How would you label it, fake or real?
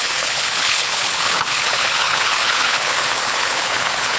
fake